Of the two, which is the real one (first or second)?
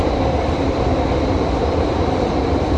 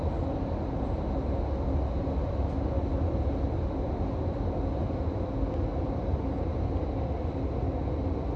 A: second